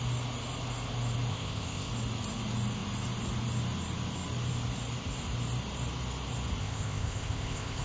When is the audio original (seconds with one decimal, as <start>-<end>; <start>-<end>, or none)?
0.0-1.3; 1.9-6.6